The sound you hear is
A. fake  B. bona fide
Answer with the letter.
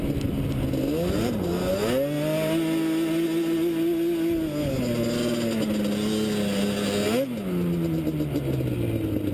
B